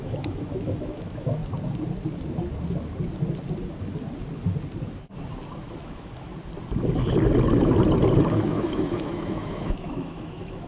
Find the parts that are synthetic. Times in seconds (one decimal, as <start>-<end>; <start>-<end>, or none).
0.0-1.4; 5.7-6.3; 8.3-10.7